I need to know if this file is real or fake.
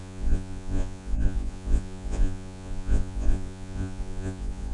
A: fake